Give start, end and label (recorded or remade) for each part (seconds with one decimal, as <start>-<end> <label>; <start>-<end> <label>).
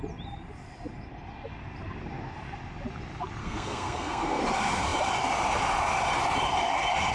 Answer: 0.0-3.4 recorded; 3.4-4.4 remade; 4.4-7.1 recorded